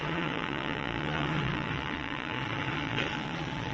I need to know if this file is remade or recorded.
remade